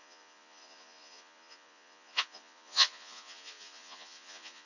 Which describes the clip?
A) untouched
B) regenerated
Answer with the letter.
B